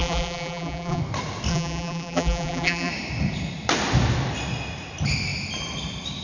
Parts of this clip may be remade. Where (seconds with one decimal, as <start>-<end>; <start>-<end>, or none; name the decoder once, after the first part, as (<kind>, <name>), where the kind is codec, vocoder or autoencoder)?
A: 0.0-1.0 (vocoder, BigVGAN v2); 1.5-2.9